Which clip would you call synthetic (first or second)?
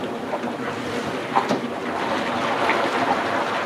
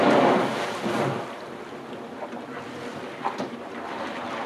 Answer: first